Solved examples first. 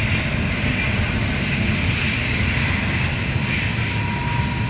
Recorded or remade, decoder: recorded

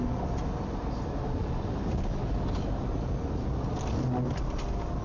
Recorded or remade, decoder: recorded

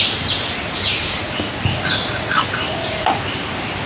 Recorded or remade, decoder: recorded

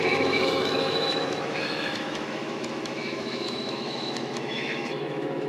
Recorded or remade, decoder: remade, autoencoder, DAC-VAE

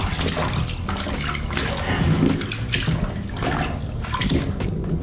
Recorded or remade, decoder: recorded